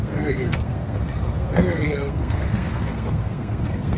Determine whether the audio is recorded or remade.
remade